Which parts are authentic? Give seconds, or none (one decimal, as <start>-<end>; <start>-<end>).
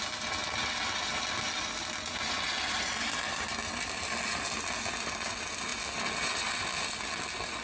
0.0-7.6